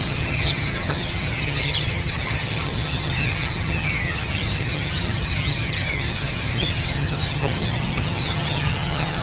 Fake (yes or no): yes